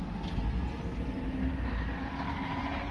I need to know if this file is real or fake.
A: real